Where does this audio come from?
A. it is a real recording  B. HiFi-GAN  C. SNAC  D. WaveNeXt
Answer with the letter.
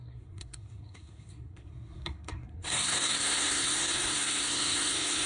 C